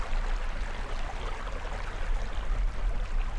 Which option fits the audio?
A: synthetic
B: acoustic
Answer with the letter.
B